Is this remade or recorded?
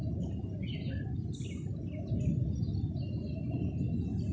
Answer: recorded